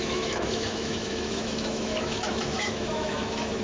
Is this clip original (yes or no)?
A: no